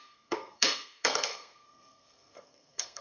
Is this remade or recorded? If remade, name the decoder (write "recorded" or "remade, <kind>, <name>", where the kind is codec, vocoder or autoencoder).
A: remade, codec, SNAC